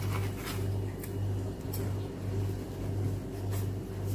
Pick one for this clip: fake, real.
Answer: real